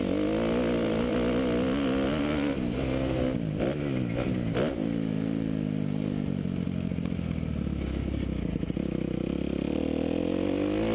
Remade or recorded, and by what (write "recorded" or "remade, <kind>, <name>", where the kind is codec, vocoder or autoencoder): recorded